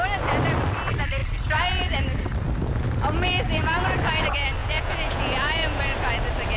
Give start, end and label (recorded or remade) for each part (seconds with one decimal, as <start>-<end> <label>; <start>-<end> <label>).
0.0-4.6 recorded; 4.6-5.8 remade; 5.8-6.6 recorded